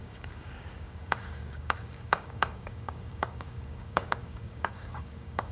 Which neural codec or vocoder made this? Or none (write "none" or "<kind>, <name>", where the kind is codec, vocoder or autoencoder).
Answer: codec, DAC